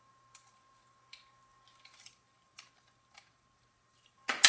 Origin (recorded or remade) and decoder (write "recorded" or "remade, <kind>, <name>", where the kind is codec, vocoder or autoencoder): remade, vocoder, BigVGAN v2